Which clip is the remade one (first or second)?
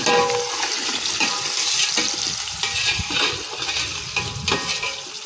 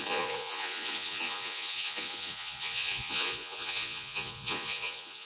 second